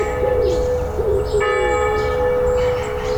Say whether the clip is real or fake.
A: real